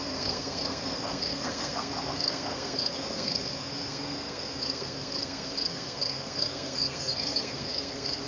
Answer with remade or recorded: remade